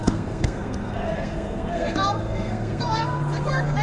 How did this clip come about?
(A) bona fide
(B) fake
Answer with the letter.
B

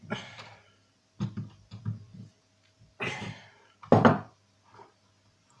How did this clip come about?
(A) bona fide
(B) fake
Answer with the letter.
A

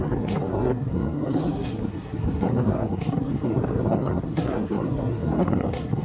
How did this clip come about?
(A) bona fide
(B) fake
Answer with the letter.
B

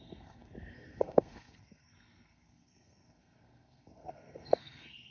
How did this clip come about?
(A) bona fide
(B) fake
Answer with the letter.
B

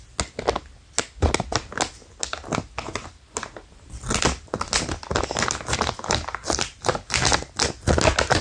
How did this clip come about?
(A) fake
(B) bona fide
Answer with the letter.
B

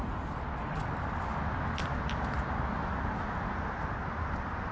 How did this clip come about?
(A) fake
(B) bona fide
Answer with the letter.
B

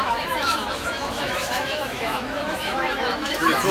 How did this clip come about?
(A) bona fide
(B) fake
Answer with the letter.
B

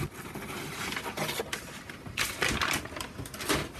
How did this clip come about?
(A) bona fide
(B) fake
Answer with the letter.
A